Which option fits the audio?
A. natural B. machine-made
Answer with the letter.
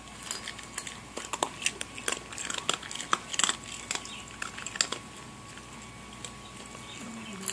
A